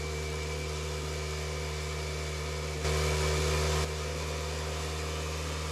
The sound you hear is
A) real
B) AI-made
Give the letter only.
A